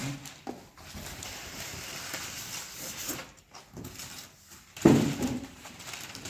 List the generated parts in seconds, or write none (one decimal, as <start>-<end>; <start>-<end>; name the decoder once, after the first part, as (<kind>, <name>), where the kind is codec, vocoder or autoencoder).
1.1-1.7 (vocoder, BigVGAN v2); 4.9-6.3